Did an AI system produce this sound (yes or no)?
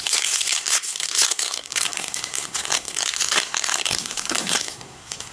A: yes